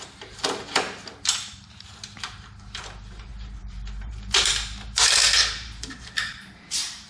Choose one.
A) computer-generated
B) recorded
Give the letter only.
A